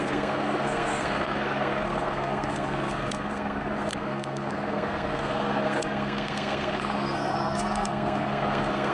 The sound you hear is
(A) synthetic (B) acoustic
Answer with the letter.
A